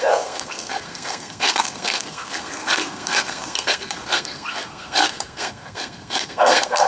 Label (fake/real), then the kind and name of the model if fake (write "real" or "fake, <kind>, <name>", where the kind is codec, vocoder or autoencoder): fake, codec, SNAC